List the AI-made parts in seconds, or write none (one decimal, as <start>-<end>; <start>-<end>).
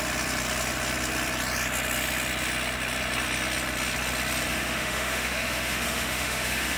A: 4.5-6.8